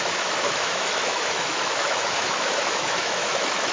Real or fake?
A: fake